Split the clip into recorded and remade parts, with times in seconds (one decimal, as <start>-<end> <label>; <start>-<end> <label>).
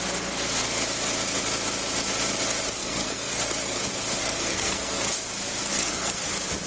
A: 0.0-2.8 recorded; 2.8-3.8 remade; 3.8-4.2 recorded; 4.2-5.1 remade; 5.1-5.6 recorded; 5.6-6.2 remade; 6.2-6.7 recorded